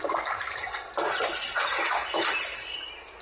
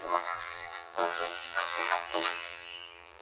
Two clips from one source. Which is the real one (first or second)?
first